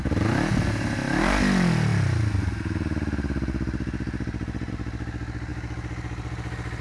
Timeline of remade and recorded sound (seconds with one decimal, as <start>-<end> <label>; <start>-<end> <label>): 0.0-6.8 recorded